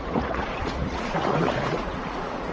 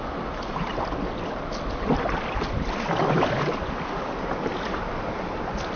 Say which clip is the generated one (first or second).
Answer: first